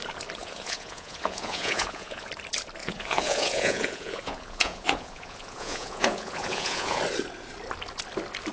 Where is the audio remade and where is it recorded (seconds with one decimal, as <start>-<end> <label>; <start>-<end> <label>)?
0.0-0.4 recorded; 0.4-2.3 remade; 2.3-2.8 recorded; 2.8-7.0 remade; 7.0-8.5 recorded